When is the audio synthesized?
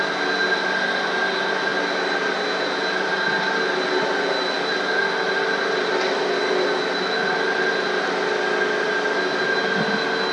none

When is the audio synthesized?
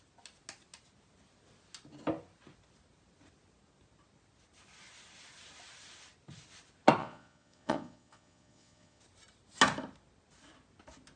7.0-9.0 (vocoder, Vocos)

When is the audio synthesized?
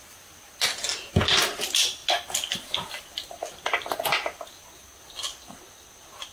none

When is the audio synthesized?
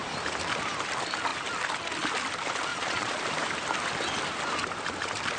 2.7-3.2 (vocoder, Vocos)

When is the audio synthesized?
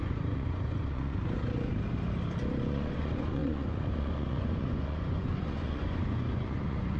0.0-1.7 (vocoder, Vocos); 2.6-7.0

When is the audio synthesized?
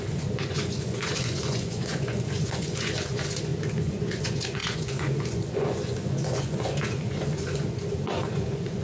0.0-8.8 (vocoder, Vocos)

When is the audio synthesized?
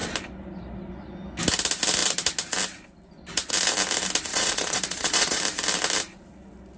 4.3-5.4 (vocoder, Vocos)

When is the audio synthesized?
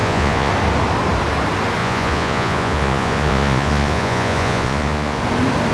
0.0-0.5 (vocoder, Vocos); 1.8-5.2